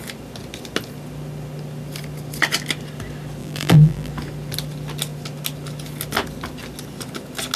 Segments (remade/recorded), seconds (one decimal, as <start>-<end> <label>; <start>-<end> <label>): 0.0-3.4 recorded; 3.4-4.1 remade; 4.1-7.6 recorded